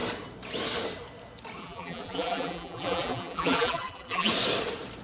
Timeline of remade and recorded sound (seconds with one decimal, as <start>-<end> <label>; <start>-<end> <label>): 0.0-1.6 recorded; 1.6-4.3 remade; 4.3-5.0 recorded